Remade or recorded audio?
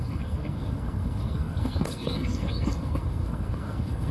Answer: remade